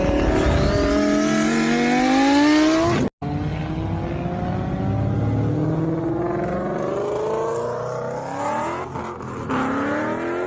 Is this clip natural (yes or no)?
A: yes